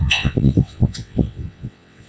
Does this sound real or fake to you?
fake